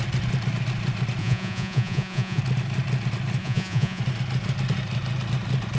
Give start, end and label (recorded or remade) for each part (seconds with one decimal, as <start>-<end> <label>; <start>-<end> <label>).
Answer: 0.0-1.2 recorded; 1.2-2.4 remade; 2.4-3.4 recorded; 3.4-4.0 remade; 4.0-5.8 recorded